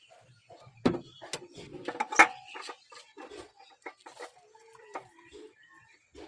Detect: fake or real real